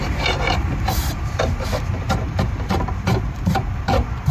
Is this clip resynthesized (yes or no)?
yes